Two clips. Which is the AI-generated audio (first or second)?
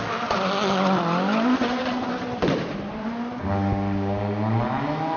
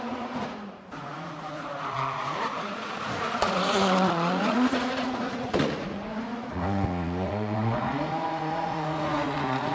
second